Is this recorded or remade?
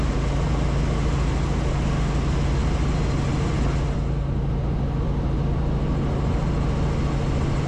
recorded